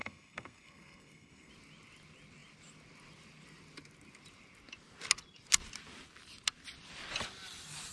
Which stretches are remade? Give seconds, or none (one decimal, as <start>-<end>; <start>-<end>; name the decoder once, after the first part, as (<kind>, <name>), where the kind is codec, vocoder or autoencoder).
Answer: 0.0-1.5 (codec, SNAC)